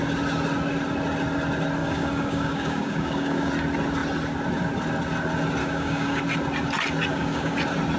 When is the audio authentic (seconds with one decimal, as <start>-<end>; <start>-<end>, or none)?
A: 0.0-1.8; 3.5-5.6; 6.2-7.1; 7.6-8.0